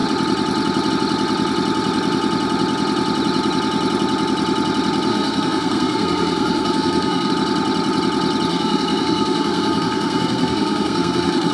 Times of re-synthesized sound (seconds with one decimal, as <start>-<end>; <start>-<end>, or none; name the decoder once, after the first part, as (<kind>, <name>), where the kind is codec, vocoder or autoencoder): 5.1-7.3 (codec, SNAC); 8.5-11.5